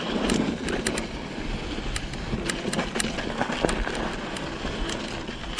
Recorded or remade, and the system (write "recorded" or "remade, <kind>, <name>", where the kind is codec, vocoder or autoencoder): recorded